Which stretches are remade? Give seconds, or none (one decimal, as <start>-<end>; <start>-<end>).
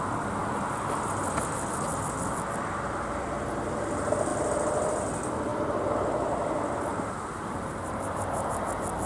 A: 6.9-8.7